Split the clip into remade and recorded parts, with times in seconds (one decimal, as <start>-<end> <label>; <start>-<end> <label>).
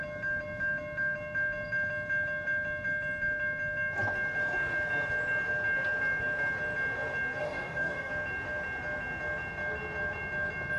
0.0-7.4 recorded; 7.4-8.1 remade; 8.1-10.8 recorded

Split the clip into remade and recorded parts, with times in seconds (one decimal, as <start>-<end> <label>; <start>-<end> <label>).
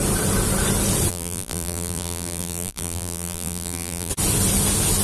0.0-1.1 recorded; 1.1-4.1 remade; 4.1-5.0 recorded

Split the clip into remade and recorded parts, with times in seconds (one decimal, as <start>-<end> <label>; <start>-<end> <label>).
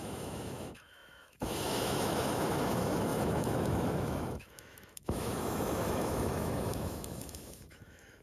0.0-8.2 remade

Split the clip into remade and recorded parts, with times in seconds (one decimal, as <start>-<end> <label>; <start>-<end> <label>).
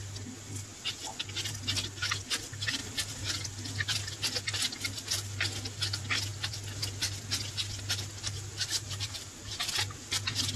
0.0-10.6 recorded